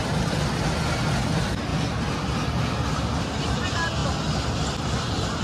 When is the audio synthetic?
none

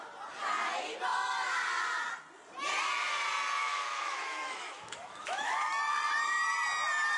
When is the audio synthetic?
3.6-5.7